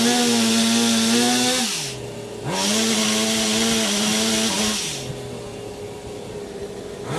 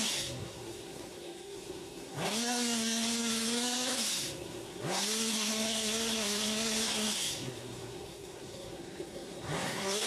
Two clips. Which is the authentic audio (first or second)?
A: first